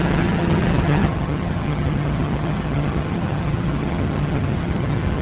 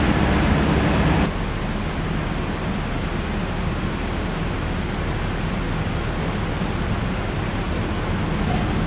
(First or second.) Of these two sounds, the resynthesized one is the first